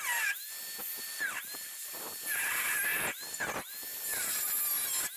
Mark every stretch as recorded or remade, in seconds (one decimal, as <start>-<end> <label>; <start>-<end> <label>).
0.0-0.8 recorded; 0.8-2.8 remade; 2.8-3.9 recorded; 3.9-4.4 remade; 4.4-5.2 recorded